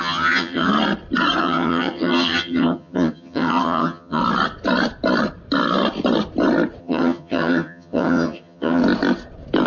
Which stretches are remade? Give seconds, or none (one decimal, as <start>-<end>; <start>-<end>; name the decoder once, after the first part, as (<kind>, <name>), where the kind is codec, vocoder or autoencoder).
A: 0.0-0.7 (vocoder, HiFi-GAN); 1.4-4.2; 6.8-8.8